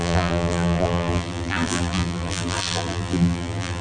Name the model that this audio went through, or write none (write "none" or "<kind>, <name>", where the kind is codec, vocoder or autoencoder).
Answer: vocoder, BigVGAN v2